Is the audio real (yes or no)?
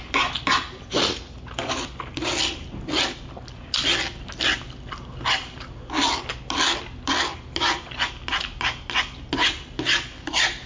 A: yes